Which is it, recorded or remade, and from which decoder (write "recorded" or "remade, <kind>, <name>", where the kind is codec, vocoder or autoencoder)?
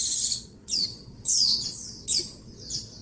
remade, vocoder, WaveNeXt